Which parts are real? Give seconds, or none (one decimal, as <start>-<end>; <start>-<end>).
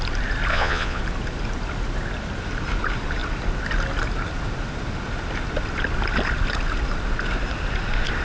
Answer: 0.0-0.5; 1.0-8.2